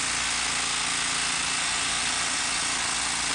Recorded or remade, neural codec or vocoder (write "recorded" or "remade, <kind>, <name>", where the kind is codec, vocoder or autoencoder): recorded